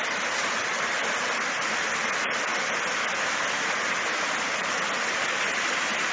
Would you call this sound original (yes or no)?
yes